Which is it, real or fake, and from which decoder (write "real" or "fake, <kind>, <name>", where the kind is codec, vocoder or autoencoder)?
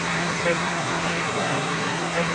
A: fake, codec, SNAC